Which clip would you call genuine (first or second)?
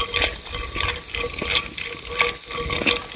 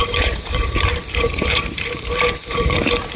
first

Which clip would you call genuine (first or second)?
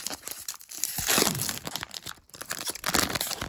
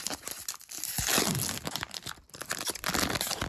second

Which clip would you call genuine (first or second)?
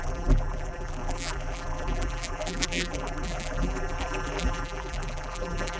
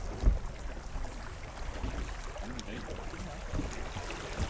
second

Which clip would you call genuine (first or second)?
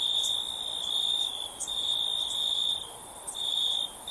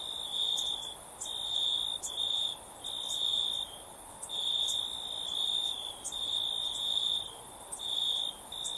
second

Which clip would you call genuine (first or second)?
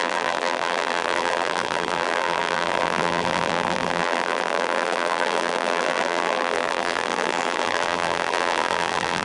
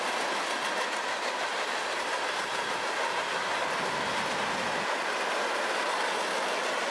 second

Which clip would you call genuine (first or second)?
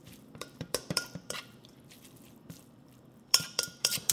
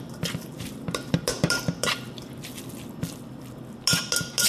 second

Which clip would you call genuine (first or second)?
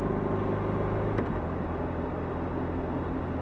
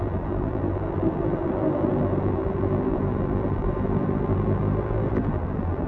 first